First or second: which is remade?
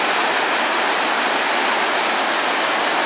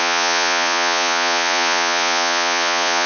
second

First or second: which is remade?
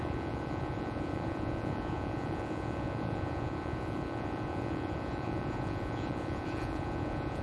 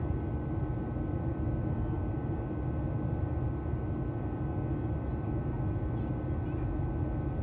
first